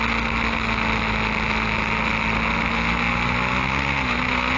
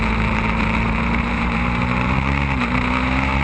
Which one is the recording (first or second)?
first